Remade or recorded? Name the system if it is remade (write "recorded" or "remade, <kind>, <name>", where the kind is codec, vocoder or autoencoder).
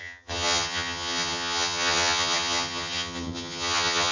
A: remade, vocoder, HiFi-GAN